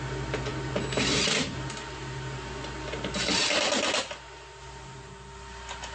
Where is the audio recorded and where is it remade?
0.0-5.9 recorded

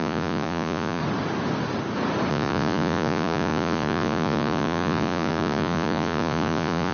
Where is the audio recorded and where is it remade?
0.0-1.0 remade; 1.0-2.3 recorded; 2.3-6.9 remade

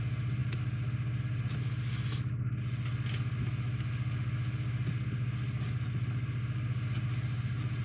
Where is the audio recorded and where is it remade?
0.0-7.8 recorded

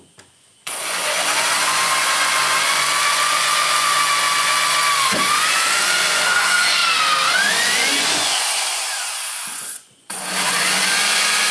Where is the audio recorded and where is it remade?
0.0-6.8 remade; 6.8-7.5 recorded; 7.5-11.5 remade

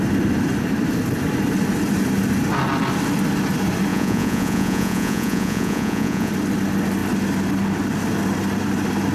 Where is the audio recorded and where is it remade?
0.0-3.9 recorded; 3.9-6.3 remade; 6.3-9.1 recorded

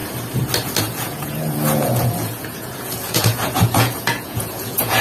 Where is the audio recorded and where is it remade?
0.0-0.8 recorded; 0.8-5.0 remade